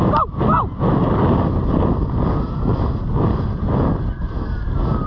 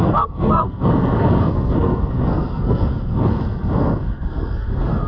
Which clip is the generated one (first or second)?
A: second